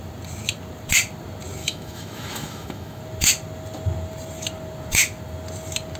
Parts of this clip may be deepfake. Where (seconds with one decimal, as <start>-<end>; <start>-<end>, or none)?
1.6-3.0